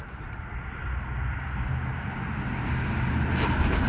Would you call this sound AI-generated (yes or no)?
no